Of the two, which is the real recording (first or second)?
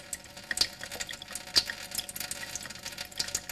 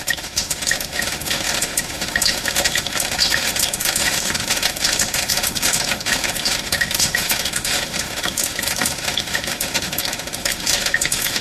first